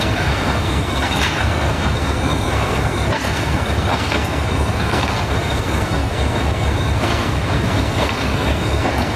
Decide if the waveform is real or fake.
fake